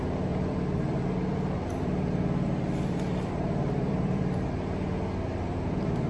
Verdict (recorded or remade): remade